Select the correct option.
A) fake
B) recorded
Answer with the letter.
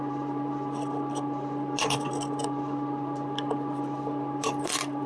A